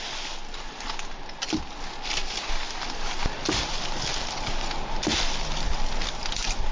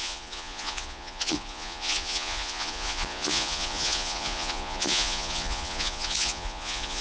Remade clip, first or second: second